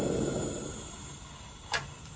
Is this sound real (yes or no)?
yes